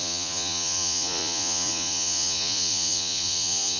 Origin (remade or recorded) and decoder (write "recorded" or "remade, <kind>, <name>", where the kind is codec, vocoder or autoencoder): remade, vocoder, Vocos